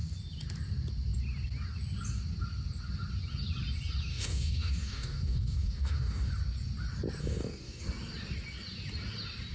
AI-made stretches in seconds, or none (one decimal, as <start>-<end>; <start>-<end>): 4.1-6.3; 7.2-7.8